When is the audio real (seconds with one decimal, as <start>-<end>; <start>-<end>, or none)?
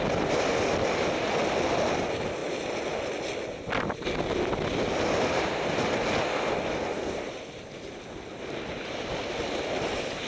0.0-10.3